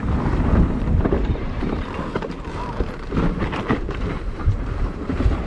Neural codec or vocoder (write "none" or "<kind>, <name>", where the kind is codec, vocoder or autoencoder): vocoder, BigVGAN v2